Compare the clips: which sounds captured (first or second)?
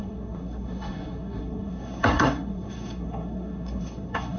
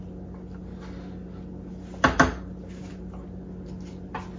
second